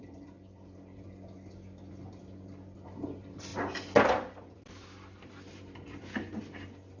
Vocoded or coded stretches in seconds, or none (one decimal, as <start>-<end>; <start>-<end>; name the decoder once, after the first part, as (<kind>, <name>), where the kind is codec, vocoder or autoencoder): none